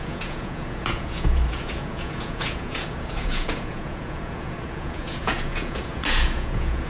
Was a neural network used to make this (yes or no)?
yes